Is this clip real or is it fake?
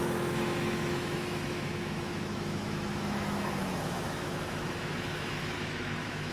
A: fake